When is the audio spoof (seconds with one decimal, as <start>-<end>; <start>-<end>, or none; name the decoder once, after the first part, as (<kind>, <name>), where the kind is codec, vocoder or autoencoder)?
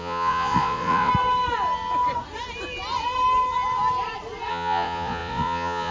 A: 0.0-1.1 (vocoder, Vocos); 4.5-5.9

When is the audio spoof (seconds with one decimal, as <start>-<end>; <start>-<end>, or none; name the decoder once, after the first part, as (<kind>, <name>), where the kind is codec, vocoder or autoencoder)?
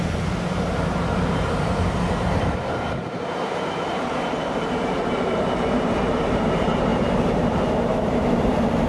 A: 0.0-8.9 (vocoder, BigVGAN v2)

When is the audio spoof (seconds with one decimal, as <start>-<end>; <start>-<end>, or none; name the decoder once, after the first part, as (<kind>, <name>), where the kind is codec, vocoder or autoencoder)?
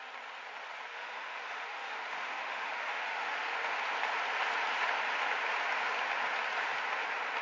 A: 0.9-3.7 (autoencoder, DAC-VAE)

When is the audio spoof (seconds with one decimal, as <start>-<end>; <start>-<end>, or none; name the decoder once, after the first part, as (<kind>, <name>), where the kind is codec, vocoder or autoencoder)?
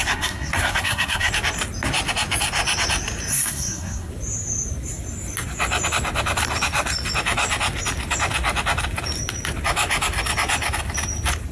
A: 0.0-1.3 (codec, SNAC); 3.3-4.1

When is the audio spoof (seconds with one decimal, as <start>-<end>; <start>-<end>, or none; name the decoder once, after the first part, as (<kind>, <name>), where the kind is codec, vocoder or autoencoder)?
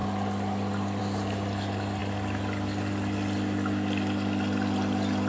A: none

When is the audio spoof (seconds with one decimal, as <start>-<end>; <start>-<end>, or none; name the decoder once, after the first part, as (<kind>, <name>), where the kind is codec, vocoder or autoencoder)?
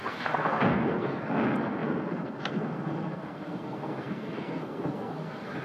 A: 0.0-5.6 (codec, SNAC)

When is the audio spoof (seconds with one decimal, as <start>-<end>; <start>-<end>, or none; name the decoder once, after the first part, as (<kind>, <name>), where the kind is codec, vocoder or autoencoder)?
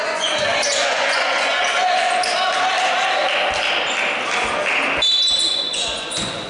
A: 0.0-2.2 (vocoder, Vocos); 5.5-6.5